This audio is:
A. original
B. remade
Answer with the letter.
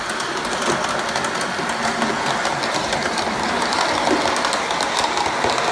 A